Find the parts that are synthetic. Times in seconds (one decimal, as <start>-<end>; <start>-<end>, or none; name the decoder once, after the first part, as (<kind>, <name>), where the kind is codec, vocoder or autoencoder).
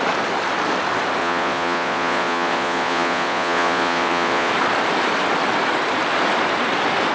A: 1.2-4.5 (vocoder, Vocos)